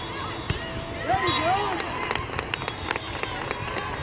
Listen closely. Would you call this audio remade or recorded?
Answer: recorded